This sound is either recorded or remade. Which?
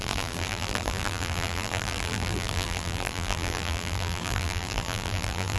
remade